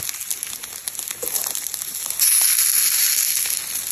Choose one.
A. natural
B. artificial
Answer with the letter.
A